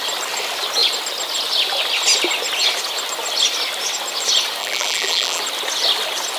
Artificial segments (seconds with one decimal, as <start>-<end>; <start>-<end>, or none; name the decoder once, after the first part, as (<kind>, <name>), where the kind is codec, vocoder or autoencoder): 4.6-5.4 (vocoder, BigVGAN v2)